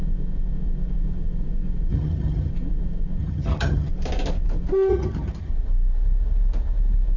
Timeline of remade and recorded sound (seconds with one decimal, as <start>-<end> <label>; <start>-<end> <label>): 0.0-1.9 recorded; 1.9-2.5 remade; 2.5-3.2 recorded; 3.2-3.9 remade; 3.9-4.9 recorded; 4.9-5.5 remade; 5.5-7.2 recorded